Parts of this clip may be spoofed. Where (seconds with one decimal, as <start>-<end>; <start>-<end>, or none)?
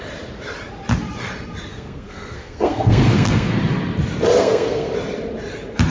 1.7-3.6; 4.4-4.9